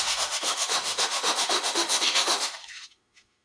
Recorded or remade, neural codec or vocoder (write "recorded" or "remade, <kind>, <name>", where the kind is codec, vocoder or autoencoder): remade, autoencoder, DAC-VAE